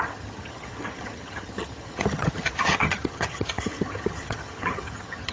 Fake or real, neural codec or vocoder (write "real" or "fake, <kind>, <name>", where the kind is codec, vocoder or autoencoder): fake, vocoder, HiFi-GAN